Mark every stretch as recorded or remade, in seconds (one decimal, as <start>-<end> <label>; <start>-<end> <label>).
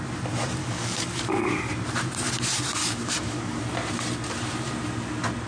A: 0.0-0.6 recorded; 0.6-1.7 remade; 1.7-2.8 recorded; 2.8-3.6 remade; 3.6-5.5 recorded